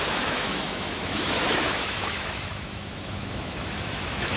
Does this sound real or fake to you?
fake